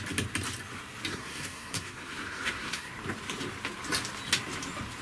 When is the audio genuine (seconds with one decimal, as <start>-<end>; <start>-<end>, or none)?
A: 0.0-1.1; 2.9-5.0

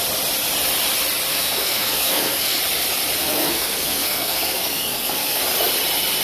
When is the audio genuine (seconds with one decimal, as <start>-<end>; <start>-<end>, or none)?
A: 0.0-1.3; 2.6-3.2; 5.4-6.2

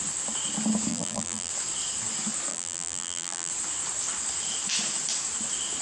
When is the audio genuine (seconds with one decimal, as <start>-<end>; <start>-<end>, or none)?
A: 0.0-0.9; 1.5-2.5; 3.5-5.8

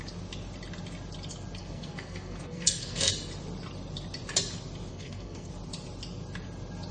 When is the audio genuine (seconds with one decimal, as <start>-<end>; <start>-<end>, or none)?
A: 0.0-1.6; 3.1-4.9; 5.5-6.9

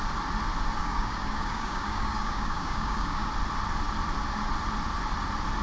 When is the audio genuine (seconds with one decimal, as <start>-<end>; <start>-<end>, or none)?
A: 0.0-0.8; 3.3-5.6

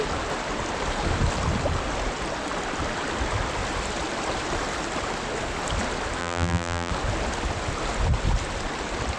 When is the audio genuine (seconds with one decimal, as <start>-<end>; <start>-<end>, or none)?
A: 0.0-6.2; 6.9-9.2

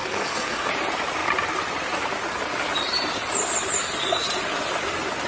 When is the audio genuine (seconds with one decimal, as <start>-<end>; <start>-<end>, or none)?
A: 0.7-5.3